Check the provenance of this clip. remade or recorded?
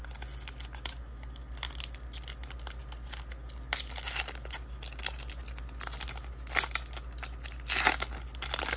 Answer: recorded